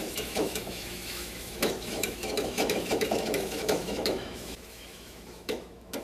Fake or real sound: fake